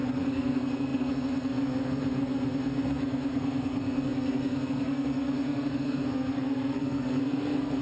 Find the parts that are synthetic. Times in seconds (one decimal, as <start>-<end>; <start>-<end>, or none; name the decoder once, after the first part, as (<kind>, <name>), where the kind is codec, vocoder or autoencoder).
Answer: 0.0-7.8 (codec, SNAC)